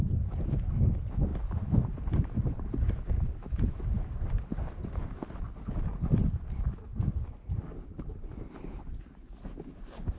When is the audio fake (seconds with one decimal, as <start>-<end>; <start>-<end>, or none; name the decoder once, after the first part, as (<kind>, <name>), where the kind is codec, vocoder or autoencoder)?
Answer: 1.3-4.6 (vocoder, BigVGAN v2)